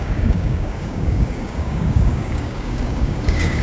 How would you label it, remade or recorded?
remade